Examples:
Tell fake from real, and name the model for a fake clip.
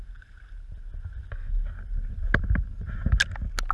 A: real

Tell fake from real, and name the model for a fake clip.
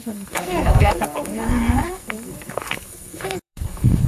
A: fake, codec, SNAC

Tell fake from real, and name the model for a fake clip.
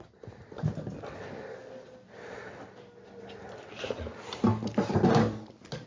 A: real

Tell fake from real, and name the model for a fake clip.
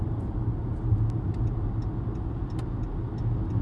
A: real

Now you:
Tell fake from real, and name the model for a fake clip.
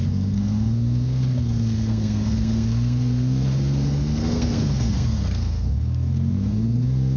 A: fake, codec, SNAC